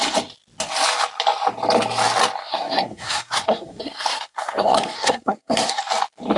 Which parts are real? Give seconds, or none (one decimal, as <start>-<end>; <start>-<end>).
0.0-2.4; 5.8-6.4